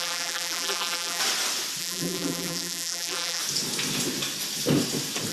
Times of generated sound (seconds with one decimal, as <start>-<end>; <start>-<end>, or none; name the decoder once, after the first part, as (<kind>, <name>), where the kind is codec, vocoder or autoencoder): 0.0-1.2 (vocoder, BigVGAN v2); 1.8-3.4